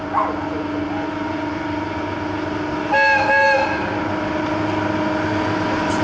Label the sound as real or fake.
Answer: real